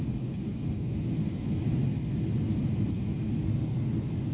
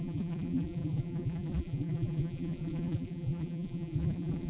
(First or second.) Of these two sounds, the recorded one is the first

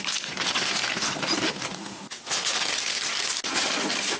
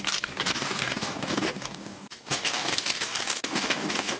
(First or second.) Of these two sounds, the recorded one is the first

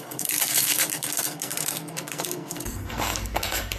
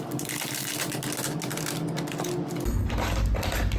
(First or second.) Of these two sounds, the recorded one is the second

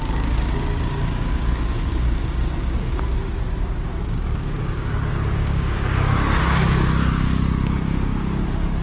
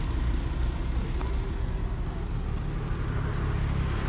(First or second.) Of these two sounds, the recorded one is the second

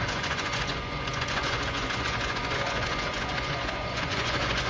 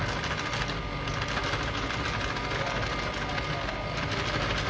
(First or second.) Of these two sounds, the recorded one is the second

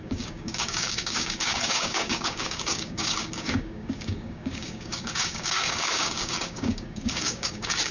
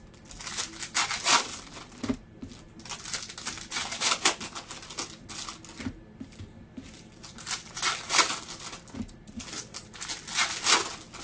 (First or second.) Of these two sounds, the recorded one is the second